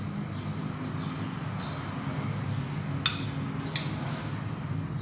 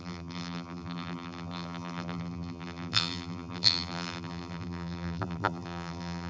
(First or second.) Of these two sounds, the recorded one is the first